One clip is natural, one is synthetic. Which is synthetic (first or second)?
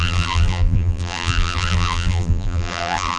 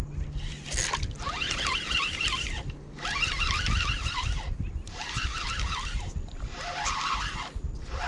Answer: first